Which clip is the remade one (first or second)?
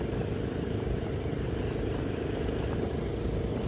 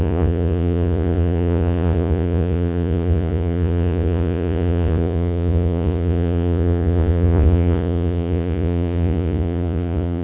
second